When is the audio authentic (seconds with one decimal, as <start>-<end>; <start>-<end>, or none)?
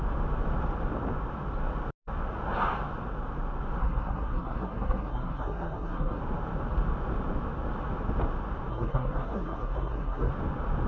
0.0-3.8; 6.2-8.7; 10.3-10.9